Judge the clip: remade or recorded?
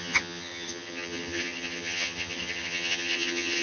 remade